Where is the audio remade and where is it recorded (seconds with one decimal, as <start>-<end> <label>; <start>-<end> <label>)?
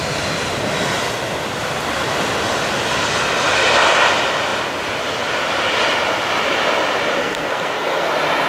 0.0-7.2 recorded; 7.2-8.1 remade; 8.1-8.5 recorded